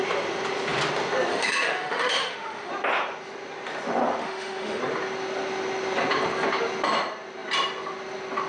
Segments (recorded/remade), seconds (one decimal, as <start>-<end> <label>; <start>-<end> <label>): 0.0-1.3 recorded; 1.3-2.7 remade; 2.7-4.2 recorded; 4.2-4.8 remade; 4.8-8.5 recorded